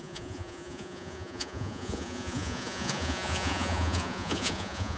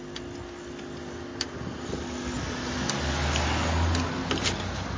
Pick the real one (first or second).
second